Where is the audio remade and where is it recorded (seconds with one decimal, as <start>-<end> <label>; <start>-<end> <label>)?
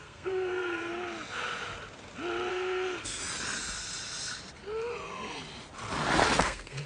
0.0-0.9 remade; 0.9-2.5 recorded; 2.5-3.2 remade; 3.2-6.4 recorded; 6.4-6.9 remade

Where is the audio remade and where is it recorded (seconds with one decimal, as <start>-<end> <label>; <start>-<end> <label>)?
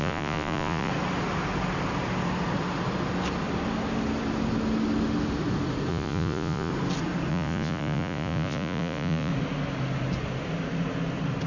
0.0-0.9 remade; 0.9-5.9 recorded; 5.9-6.7 remade; 6.7-7.3 recorded; 7.3-9.3 remade; 9.3-11.5 recorded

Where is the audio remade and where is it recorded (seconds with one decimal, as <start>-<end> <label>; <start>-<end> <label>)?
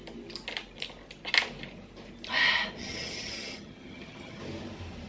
0.0-2.8 recorded; 2.8-4.4 remade; 4.4-5.1 recorded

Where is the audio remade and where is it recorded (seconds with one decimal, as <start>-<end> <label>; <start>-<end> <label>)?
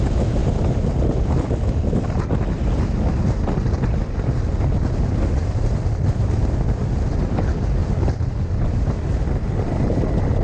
0.0-5.4 recorded; 5.4-6.8 remade; 6.8-7.8 recorded; 7.8-8.7 remade; 8.7-10.4 recorded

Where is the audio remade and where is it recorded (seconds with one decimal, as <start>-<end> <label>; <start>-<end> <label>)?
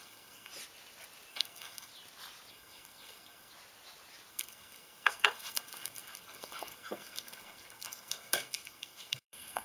0.0-0.5 remade; 0.5-1.3 recorded; 1.3-1.9 remade; 1.9-2.5 recorded; 2.5-3.5 remade; 3.5-4.3 recorded; 4.3-9.6 remade